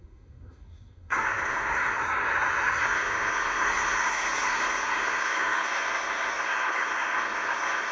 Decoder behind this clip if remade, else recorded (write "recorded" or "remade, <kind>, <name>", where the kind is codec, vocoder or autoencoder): remade, codec, SNAC